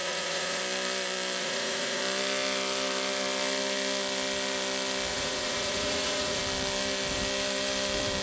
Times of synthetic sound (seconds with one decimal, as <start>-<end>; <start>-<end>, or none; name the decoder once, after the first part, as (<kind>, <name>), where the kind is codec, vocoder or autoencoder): 0.0-0.6 (vocoder, Vocos); 1.4-2.0; 5.1-6.4